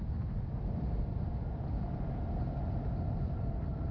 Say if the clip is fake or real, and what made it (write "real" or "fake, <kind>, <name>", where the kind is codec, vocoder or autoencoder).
real